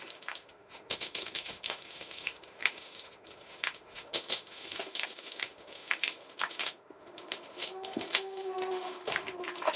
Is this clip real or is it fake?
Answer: fake